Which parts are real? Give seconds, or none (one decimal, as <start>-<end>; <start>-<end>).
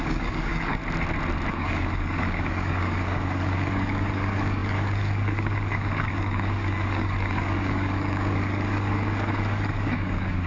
0.8-1.5